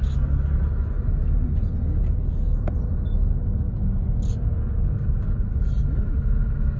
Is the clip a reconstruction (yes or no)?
no